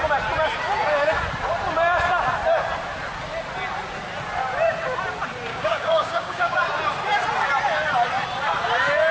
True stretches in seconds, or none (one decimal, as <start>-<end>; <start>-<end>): 0.0-5.5; 6.6-9.1